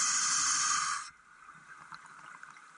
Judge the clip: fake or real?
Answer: real